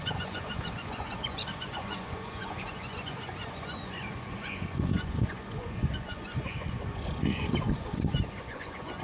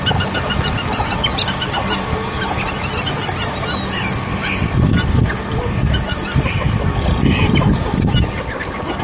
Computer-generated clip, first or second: first